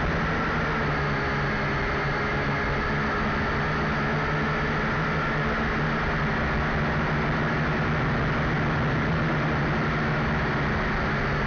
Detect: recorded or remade recorded